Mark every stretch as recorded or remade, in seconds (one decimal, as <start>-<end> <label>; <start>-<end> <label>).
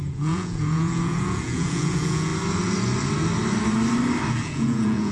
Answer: 0.0-2.3 remade; 2.3-4.3 recorded; 4.3-5.1 remade